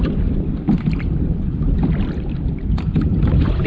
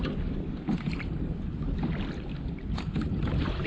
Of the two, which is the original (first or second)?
second